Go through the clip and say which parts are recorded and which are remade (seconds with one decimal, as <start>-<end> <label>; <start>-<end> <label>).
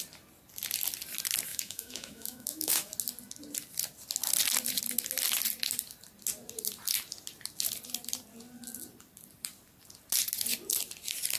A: 0.0-1.5 recorded; 1.5-2.9 remade; 2.9-11.4 recorded